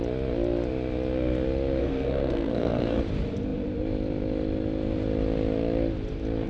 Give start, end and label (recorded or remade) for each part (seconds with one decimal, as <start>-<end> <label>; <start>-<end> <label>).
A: 0.0-1.8 recorded; 1.8-3.0 remade; 3.0-6.5 recorded